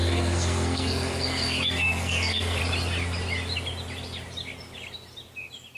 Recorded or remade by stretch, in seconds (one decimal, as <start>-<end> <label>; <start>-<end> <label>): 0.0-2.6 remade; 2.6-5.8 recorded